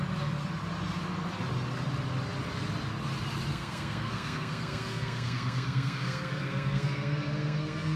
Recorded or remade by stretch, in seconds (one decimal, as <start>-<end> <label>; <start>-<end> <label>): 0.0-3.5 recorded; 3.5-8.0 remade